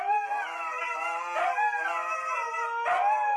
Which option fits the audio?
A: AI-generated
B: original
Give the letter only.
B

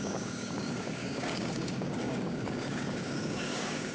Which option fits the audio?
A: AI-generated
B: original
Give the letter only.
A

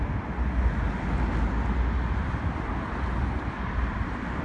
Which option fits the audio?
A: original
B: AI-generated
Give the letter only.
A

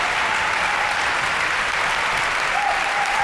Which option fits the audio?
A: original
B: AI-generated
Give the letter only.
A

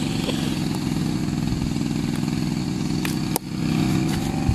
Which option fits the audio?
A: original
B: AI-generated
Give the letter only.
A